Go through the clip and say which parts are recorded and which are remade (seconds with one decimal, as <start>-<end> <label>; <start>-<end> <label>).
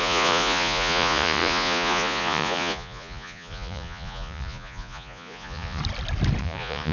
0.0-5.8 remade; 5.8-6.4 recorded; 6.4-6.9 remade